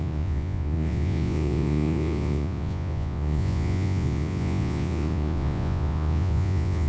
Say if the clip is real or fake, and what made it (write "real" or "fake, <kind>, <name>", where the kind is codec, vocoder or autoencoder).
fake, vocoder, Vocos